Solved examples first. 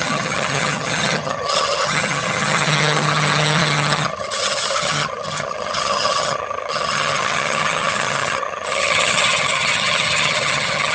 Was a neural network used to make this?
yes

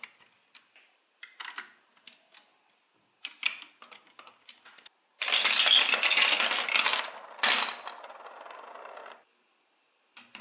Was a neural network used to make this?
no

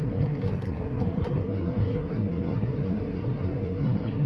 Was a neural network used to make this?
yes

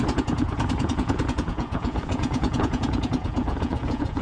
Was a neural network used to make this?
yes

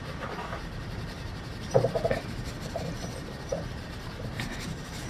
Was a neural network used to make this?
yes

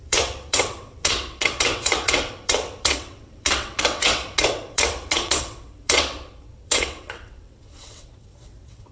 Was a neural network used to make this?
yes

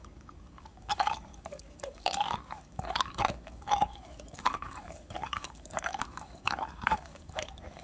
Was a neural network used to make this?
yes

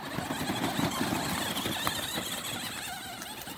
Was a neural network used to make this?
no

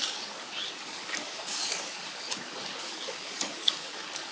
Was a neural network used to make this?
yes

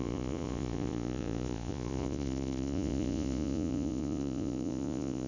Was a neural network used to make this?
yes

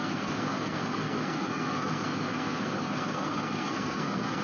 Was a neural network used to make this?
yes